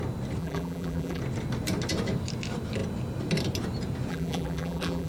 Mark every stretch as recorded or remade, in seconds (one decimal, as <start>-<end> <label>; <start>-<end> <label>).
0.0-0.4 recorded; 0.4-1.2 remade; 1.2-4.1 recorded; 4.1-5.1 remade